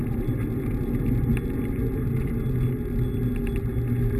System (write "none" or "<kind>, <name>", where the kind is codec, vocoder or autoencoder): none